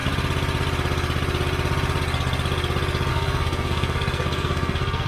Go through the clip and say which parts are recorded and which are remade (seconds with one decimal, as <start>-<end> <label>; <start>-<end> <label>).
0.0-3.1 recorded; 3.1-5.1 remade